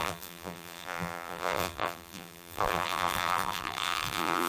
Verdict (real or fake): fake